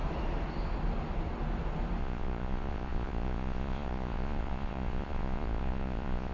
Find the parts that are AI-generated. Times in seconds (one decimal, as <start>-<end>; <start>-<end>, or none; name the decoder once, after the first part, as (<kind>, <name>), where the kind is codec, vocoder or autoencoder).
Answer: 2.0-6.3 (vocoder, Vocos)